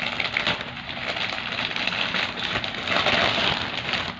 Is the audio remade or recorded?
recorded